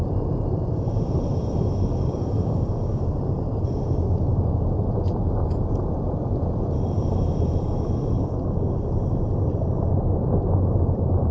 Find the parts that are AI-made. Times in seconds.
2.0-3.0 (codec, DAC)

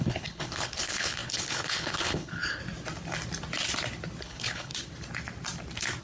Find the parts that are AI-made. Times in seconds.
0.0-2.6 (codec, HILCodec); 4.2-4.7

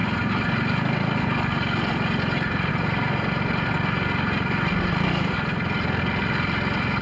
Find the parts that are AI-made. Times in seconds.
none

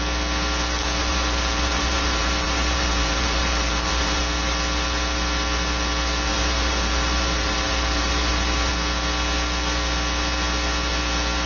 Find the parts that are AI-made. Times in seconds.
1.0-4.2 (vocoder, BigVGAN v2); 6.3-8.7